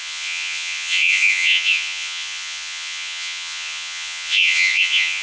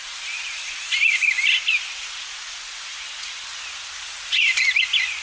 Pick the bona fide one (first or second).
second